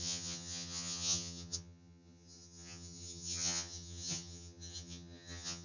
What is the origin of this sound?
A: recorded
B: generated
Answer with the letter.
B